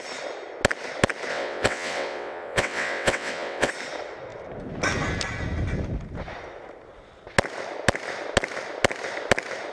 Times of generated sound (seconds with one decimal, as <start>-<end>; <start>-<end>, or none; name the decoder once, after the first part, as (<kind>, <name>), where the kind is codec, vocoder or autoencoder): 1.3-3.7 (vocoder, WaveNeXt)